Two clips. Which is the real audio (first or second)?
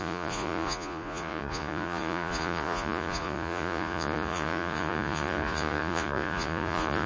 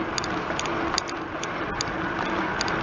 second